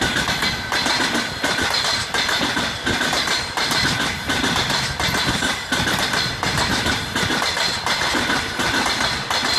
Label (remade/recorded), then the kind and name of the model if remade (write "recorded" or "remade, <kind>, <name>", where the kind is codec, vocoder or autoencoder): recorded